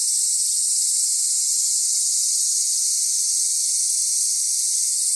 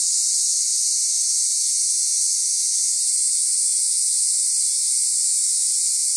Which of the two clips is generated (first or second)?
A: second